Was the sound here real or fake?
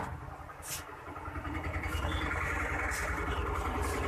real